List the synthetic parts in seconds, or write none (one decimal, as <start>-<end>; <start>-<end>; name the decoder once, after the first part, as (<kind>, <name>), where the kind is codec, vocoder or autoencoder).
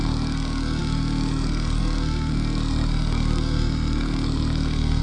0.0-5.0 (codec, SNAC)